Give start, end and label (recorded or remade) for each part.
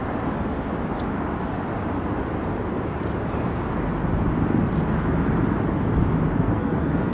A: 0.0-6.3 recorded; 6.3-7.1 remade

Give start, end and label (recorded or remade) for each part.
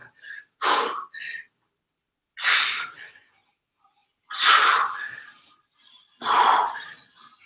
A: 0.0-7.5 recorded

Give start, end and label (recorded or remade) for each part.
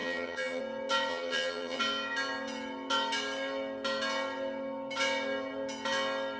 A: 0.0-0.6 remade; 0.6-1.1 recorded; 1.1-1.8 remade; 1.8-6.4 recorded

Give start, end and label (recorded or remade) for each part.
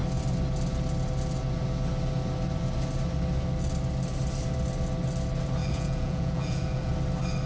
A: 0.0-5.6 recorded; 5.6-6.9 remade; 6.9-7.5 recorded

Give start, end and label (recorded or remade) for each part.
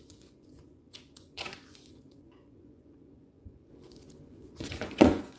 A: 0.0-5.4 remade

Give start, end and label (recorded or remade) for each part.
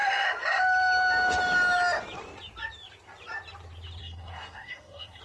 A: 0.0-4.0 recorded; 4.0-5.2 remade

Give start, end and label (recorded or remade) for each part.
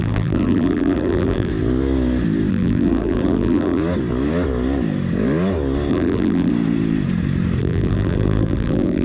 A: 0.0-1.5 remade; 1.5-2.5 recorded; 2.5-3.8 remade; 3.8-5.9 recorded; 5.9-6.5 remade; 6.5-7.6 recorded; 7.6-9.0 remade